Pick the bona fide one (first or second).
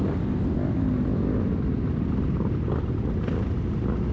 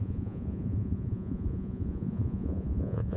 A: first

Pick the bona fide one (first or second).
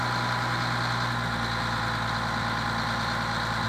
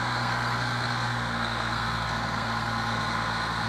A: first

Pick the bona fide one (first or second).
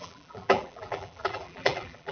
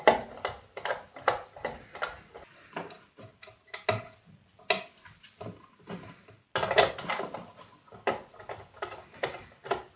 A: second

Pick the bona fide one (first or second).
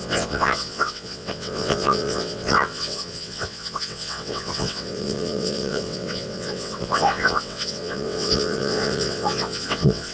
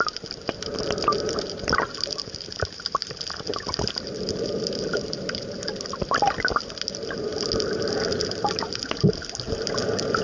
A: second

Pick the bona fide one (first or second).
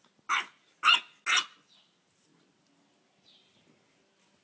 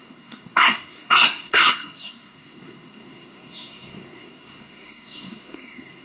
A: first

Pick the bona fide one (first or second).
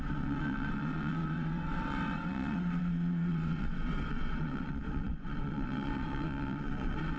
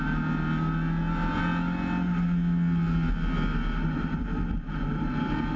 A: second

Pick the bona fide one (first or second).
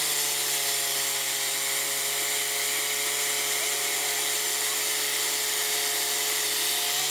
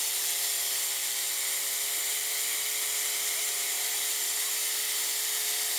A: first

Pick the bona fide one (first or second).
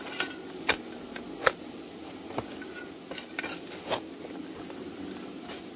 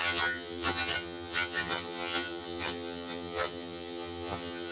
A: first